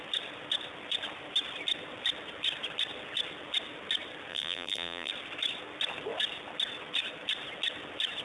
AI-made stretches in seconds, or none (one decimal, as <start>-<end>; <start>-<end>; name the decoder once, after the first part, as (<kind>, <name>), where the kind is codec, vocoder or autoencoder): 4.3-5.1 (vocoder, BigVGAN v2)